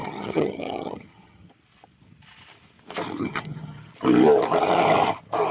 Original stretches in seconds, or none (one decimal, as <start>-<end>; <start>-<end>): 1.5-3.2; 3.9-5.5